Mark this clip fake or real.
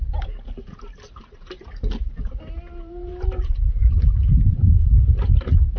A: fake